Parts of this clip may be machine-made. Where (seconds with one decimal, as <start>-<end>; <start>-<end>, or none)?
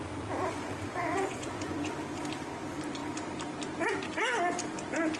0.9-1.9